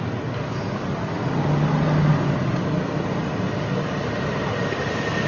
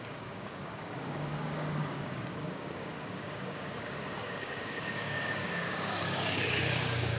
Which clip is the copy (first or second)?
second